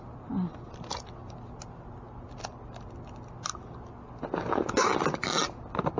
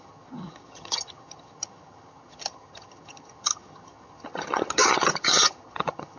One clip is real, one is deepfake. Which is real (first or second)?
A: first